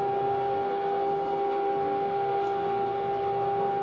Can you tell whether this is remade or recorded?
remade